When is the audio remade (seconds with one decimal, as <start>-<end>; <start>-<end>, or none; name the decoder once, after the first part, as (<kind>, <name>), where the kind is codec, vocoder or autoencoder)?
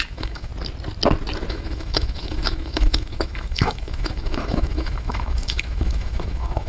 0.0-0.5 (autoencoder, DAC-VAE); 1.5-6.7